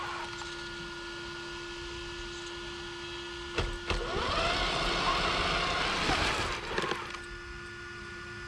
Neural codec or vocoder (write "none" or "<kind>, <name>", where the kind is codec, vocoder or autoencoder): none